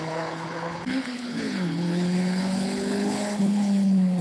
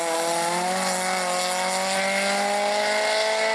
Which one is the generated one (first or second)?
first